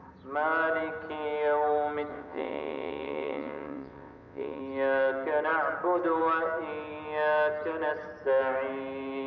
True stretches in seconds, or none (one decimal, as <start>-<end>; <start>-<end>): 0.0-2.1; 4.6-9.3